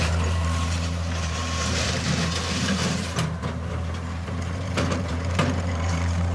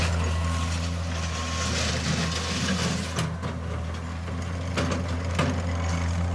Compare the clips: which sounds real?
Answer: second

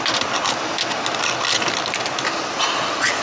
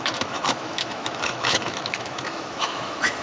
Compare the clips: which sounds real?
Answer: first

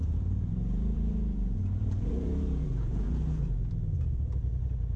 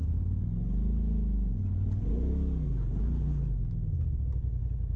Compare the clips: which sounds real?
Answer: second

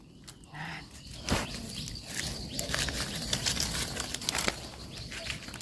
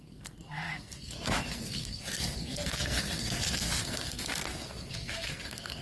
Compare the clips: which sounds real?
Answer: first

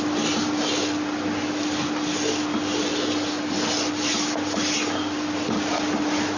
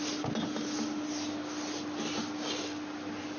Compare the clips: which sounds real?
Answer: second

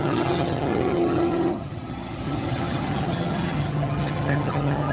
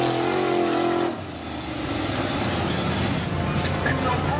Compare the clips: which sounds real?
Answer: second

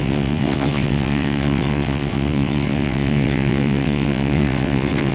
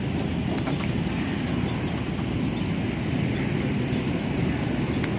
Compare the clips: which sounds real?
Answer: second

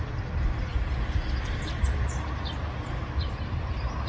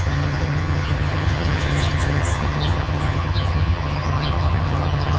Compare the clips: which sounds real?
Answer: first